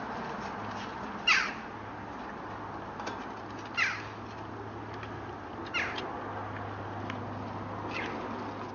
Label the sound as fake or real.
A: real